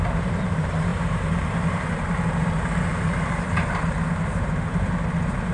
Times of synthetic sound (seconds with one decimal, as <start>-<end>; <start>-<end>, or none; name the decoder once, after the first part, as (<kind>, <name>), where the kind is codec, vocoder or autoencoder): 0.0-5.5 (vocoder, BigVGAN v2)